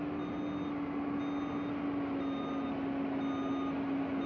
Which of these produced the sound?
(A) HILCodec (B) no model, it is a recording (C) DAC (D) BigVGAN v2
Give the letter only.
B